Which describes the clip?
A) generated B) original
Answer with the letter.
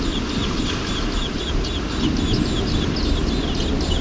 B